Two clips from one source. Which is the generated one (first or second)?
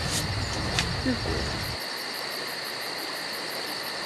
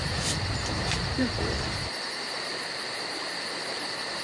second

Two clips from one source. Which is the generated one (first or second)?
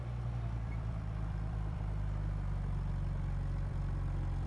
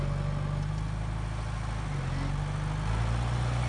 first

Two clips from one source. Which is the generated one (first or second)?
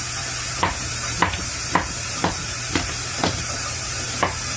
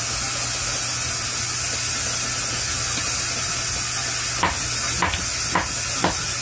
first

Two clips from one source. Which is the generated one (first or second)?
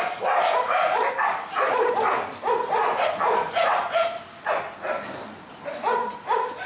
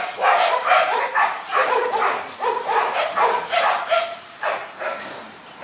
second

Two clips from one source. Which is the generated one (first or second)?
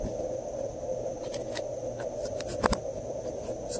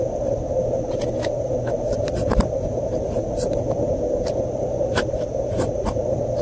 second